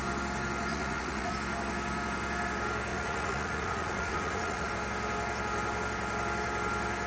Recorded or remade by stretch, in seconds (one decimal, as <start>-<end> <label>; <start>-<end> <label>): 0.0-0.7 recorded; 0.7-1.3 remade; 1.3-2.9 recorded; 2.9-4.7 remade; 4.7-7.1 recorded